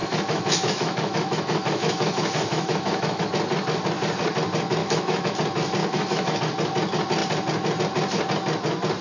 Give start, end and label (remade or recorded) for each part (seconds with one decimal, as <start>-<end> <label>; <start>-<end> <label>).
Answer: 0.0-3.2 remade; 3.2-4.8 recorded; 4.8-5.3 remade; 5.3-5.8 recorded; 5.8-6.4 remade; 6.4-9.0 recorded